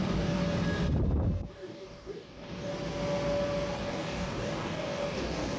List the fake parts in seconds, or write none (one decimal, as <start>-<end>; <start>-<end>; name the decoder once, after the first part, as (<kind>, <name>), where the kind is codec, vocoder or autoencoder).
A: 0.0-0.4 (codec, DAC); 1.5-2.7; 3.8-5.6